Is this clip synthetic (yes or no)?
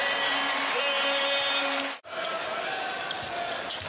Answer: no